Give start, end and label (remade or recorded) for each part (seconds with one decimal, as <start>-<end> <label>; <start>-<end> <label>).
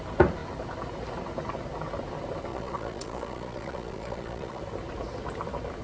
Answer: 0.0-2.5 recorded; 2.5-4.6 remade; 4.6-5.8 recorded